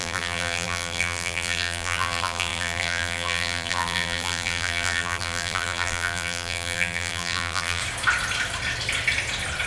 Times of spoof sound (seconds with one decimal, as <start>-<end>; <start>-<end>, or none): 0.0-7.8